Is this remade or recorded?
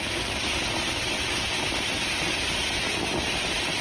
recorded